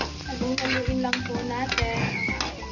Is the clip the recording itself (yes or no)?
yes